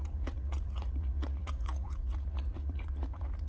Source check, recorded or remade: remade